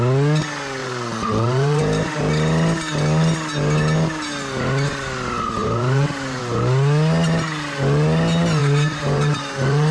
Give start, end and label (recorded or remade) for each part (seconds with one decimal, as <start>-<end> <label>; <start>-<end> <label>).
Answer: 0.0-0.8 recorded; 0.8-2.3 remade; 2.3-5.6 recorded; 5.6-6.4 remade; 6.4-8.6 recorded; 8.6-9.9 remade